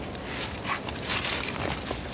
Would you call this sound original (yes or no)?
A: yes